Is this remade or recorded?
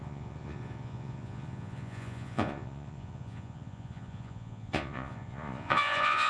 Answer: remade